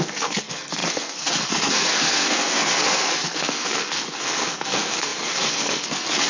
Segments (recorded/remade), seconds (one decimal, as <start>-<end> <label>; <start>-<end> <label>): 0.0-6.3 remade